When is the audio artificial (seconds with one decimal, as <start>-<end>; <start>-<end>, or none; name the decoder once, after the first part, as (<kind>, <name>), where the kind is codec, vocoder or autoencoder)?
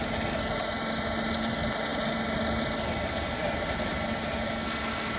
none